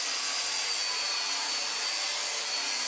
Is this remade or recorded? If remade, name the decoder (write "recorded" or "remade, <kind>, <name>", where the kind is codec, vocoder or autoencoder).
recorded